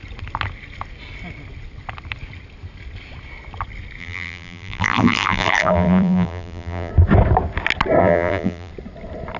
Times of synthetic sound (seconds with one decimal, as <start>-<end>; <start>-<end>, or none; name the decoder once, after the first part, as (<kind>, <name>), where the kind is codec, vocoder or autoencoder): 4.0-6.9 (vocoder, BigVGAN v2); 8.0-8.7